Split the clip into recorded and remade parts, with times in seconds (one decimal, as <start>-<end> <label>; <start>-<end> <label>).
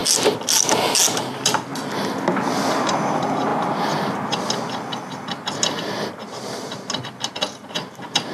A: 0.0-8.3 recorded